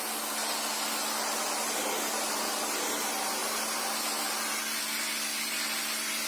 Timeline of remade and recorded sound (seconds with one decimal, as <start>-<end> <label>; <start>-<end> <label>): 0.0-6.3 recorded